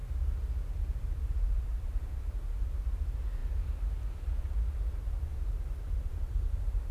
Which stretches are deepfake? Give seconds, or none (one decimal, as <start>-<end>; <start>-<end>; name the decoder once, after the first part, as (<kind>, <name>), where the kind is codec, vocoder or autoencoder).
0.6-6.9 (vocoder, BigVGAN v2)